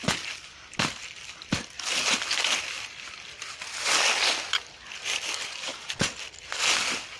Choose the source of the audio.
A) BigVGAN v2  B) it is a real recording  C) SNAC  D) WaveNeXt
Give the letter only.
B